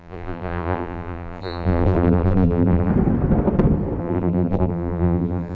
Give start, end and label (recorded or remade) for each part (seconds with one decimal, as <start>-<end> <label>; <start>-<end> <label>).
0.0-2.9 remade; 2.9-4.0 recorded; 4.0-5.5 remade